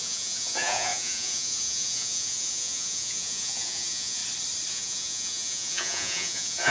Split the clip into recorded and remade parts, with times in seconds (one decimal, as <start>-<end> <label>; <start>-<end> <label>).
0.0-4.2 remade; 4.2-4.7 recorded; 4.7-6.7 remade